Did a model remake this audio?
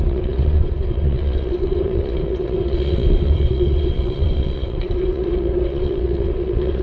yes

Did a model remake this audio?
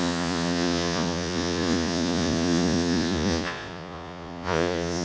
yes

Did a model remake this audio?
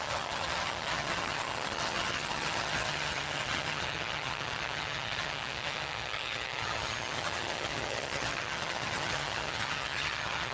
yes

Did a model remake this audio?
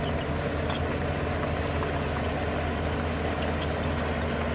no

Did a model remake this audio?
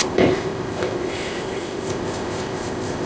yes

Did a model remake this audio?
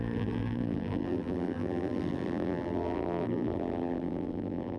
yes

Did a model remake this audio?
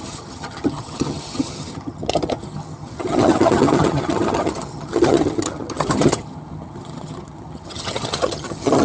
yes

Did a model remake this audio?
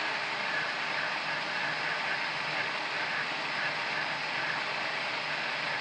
no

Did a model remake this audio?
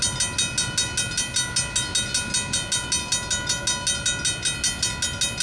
no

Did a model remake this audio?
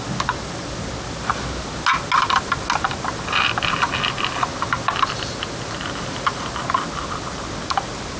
no